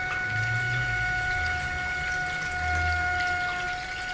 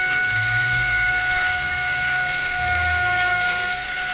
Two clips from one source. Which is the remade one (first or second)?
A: second